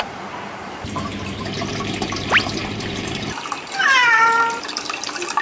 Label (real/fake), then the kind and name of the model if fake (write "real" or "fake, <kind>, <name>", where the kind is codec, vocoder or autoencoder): fake, vocoder, BigVGAN v2